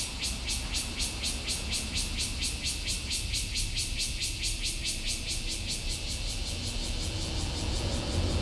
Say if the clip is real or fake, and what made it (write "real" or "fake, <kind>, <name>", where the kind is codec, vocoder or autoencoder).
real